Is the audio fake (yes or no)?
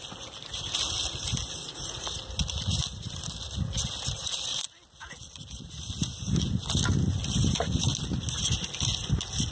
no